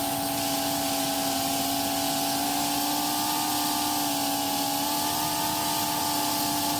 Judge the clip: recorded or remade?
recorded